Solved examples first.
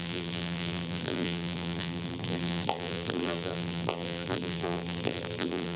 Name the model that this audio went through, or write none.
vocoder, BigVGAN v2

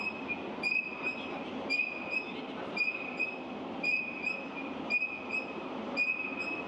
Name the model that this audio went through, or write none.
none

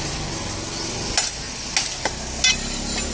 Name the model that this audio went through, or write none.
none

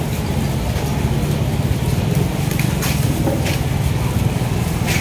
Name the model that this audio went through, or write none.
none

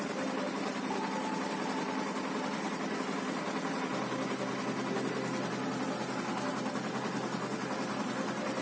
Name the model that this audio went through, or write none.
none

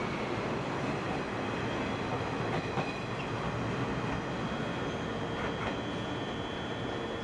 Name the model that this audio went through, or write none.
none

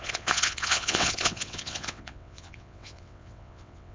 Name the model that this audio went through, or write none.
vocoder, WaveNeXt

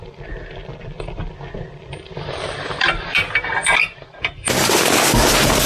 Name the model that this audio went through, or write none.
vocoder, BigVGAN v2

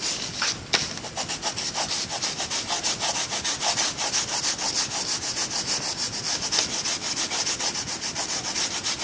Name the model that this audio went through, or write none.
none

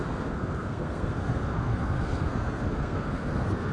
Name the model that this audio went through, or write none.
codec, SNAC